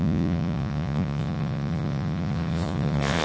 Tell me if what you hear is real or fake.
fake